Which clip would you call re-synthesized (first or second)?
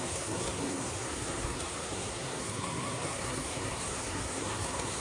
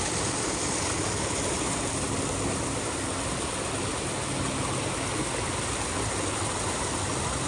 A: first